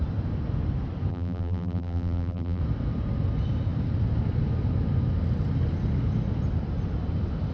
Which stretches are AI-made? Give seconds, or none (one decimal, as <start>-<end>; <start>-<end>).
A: 1.1-2.6